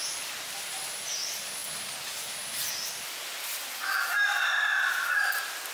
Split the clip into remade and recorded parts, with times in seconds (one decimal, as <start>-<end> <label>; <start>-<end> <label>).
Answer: 0.0-5.7 recorded

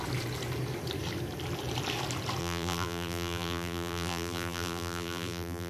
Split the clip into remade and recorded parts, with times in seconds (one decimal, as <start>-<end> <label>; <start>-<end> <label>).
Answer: 0.0-2.4 recorded; 2.4-5.7 remade

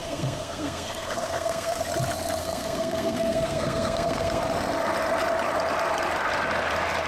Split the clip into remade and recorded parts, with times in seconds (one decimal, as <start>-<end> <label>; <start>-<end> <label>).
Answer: 0.0-1.8 remade; 1.8-2.4 recorded; 2.4-4.4 remade; 4.4-7.1 recorded

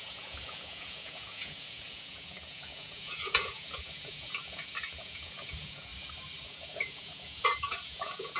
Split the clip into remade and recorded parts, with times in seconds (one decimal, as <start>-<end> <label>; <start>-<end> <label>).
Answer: 0.0-5.9 remade; 5.9-6.4 recorded; 6.4-8.4 remade

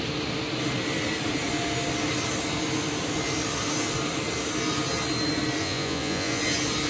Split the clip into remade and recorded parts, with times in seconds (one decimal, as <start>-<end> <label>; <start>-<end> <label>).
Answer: 0.0-5.6 recorded; 5.6-6.4 remade; 6.4-6.9 recorded

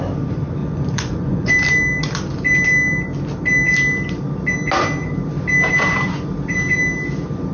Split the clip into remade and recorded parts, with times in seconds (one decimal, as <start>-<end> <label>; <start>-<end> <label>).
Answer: 0.0-0.6 recorded; 0.6-1.5 remade; 1.5-7.5 recorded

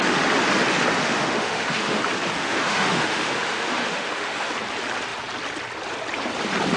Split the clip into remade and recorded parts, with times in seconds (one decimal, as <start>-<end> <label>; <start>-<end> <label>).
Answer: 0.0-1.0 recorded; 1.0-2.0 remade; 2.0-2.4 recorded; 2.4-4.5 remade; 4.5-6.8 recorded

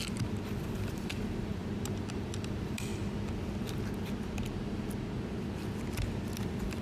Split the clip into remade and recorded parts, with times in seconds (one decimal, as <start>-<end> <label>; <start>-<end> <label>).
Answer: 0.0-2.9 remade; 2.9-6.3 recorded; 6.3-6.8 remade